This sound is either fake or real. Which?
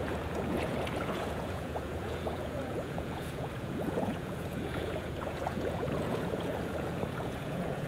fake